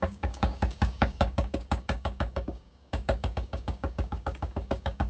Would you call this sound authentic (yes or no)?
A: no